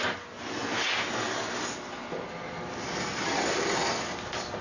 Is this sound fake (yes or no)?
no